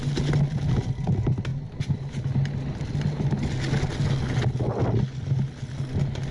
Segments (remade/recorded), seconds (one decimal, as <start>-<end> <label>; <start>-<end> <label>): 0.0-6.3 recorded